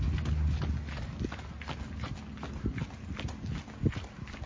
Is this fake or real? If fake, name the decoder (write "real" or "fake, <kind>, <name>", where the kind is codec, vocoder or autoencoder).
real